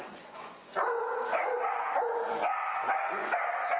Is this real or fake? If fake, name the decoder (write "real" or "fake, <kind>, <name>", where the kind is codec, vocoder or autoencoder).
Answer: fake, vocoder, Vocos